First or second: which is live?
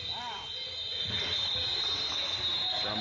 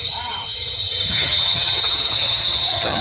first